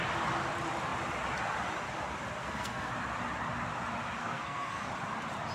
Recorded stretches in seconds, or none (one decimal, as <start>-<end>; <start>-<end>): 0.0-2.4; 2.9-4.2; 4.9-5.5